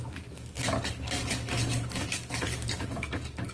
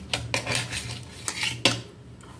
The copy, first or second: first